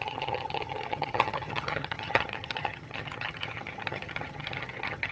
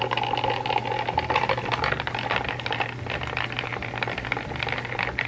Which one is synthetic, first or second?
first